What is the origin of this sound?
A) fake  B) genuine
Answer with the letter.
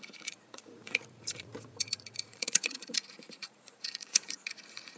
A